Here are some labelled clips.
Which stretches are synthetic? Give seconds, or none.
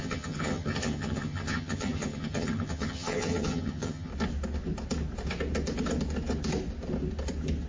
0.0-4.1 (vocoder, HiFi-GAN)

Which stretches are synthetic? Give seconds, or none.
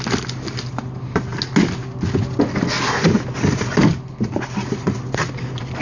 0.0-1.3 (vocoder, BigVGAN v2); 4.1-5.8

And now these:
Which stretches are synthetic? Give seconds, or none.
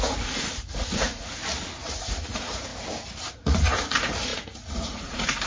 0.0-1.4 (vocoder, Vocos); 2.0-2.7; 3.3-5.5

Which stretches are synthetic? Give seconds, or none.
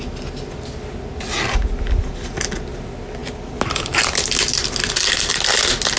none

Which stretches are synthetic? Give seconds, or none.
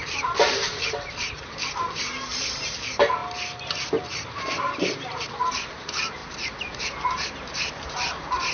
0.0-3.2 (vocoder, BigVGAN v2); 4.0-8.5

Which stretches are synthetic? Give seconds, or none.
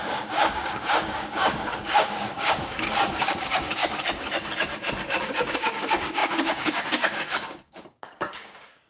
0.0-3.8 (codec, DAC); 5.2-8.9